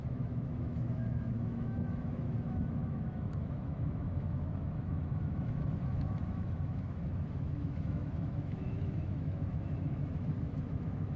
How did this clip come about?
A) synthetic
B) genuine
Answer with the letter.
A